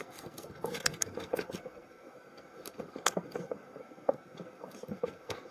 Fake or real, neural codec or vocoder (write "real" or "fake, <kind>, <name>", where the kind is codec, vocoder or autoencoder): fake, codec, SNAC